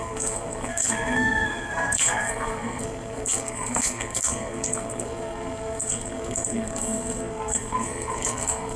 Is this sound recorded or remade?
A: remade